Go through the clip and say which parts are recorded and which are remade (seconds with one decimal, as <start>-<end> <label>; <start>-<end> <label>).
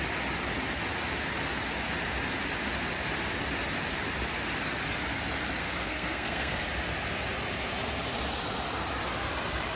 0.0-5.6 recorded; 5.6-6.6 remade; 6.6-9.8 recorded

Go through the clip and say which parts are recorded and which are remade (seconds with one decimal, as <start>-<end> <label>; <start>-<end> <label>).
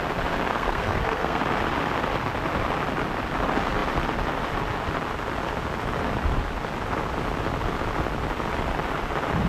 0.0-0.5 recorded; 0.5-1.4 remade; 1.4-9.5 recorded